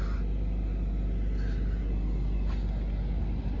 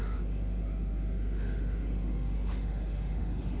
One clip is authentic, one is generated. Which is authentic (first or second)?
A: first